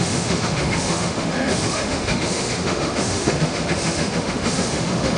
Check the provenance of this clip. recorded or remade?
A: remade